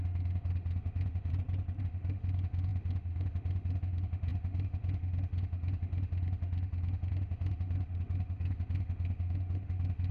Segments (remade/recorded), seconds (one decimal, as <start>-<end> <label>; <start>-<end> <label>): 0.0-1.3 remade; 1.3-1.8 recorded; 1.8-10.1 remade